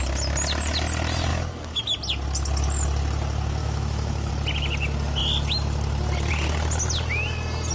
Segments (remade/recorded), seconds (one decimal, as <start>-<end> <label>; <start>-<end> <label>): 0.0-1.3 recorded; 1.3-1.8 remade; 1.8-3.6 recorded; 3.6-4.3 remade; 4.3-7.7 recorded